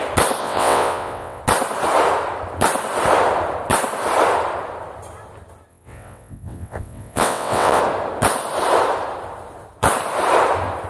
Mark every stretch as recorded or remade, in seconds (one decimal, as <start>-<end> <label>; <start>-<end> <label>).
0.0-0.4 recorded; 0.4-1.4 remade; 1.4-5.7 recorded; 5.7-7.8 remade; 7.8-10.9 recorded